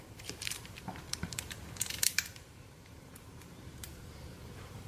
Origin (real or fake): fake